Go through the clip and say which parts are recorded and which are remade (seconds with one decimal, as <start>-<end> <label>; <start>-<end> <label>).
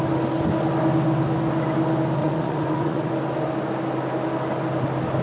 0.0-2.2 recorded; 2.2-3.1 remade; 3.1-5.2 recorded